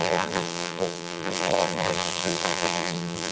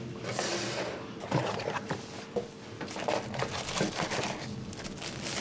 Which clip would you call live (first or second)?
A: second